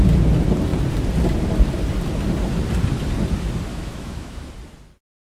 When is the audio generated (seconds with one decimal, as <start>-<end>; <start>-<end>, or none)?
3.7-4.5